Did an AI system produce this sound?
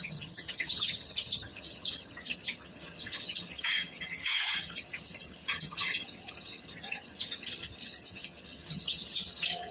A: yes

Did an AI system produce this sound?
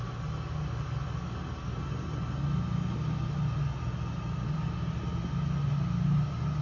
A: no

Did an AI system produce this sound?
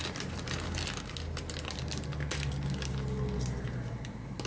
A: no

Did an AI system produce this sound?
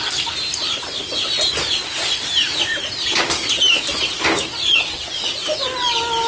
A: no